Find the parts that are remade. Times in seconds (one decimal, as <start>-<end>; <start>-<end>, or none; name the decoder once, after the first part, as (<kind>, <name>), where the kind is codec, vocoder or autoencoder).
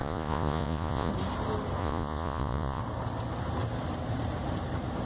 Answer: 0.0-1.1 (vocoder, Vocos); 1.8-2.8